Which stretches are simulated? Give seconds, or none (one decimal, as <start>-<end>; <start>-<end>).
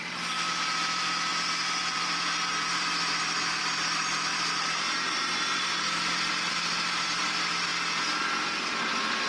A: 0.0-7.7; 8.2-9.3